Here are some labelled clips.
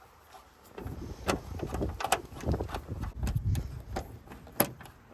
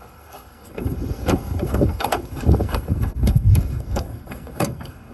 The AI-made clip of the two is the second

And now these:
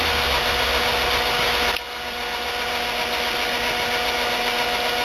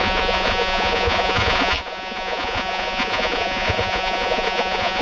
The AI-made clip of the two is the second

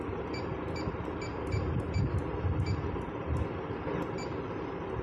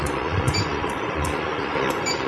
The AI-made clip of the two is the second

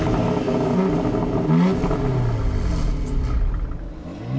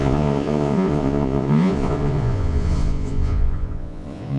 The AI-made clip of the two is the second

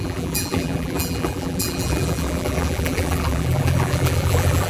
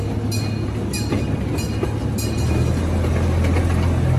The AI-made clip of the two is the first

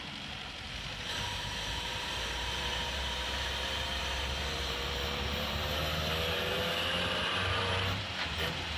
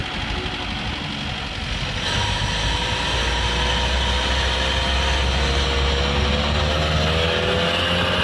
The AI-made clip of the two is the first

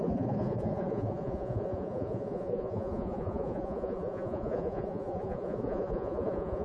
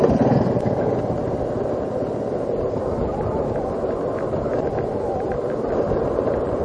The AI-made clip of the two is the first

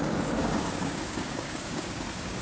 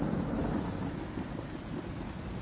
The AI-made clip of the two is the first